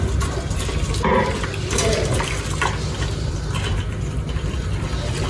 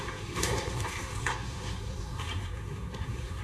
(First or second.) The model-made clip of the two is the second